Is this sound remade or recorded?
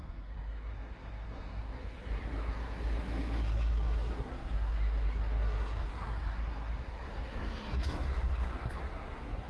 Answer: remade